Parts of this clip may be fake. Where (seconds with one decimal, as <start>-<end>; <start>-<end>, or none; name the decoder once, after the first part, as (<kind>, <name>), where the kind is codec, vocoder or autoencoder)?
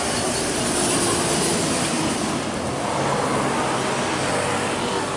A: none